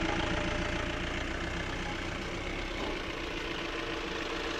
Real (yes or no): yes